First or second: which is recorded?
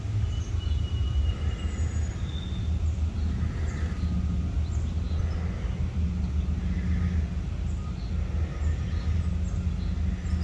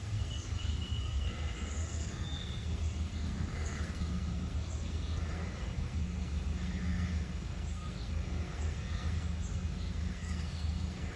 first